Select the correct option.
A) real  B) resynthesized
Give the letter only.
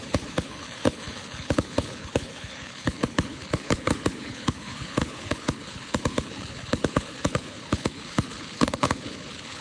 B